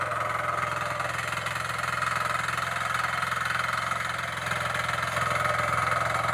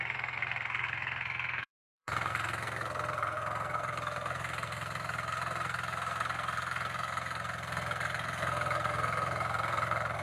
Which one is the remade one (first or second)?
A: second